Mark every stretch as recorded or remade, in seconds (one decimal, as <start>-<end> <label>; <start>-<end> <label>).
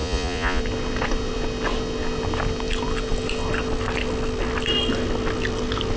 0.0-0.6 remade; 0.6-6.0 recorded